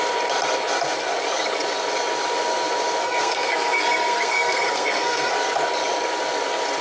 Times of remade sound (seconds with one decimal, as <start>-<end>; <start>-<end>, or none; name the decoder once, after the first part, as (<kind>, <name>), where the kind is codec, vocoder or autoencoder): 3.0-5.3 (codec, SNAC)